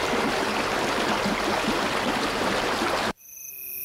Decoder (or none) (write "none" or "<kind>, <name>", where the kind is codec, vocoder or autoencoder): none